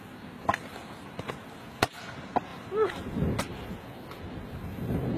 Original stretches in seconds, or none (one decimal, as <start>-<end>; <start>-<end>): 0.0-0.8; 2.0-2.5; 3.4-5.2